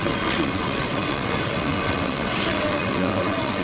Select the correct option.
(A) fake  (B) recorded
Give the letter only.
A